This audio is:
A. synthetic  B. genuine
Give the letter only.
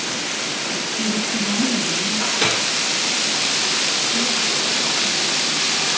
B